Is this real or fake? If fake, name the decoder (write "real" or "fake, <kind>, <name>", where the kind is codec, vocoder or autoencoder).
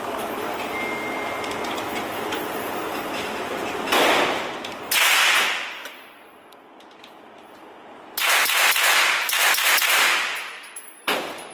real